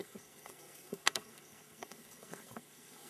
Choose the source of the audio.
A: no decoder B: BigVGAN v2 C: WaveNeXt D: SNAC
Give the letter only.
D